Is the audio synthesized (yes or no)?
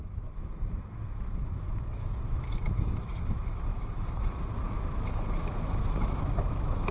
yes